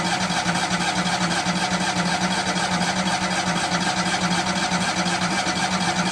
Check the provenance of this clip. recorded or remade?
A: recorded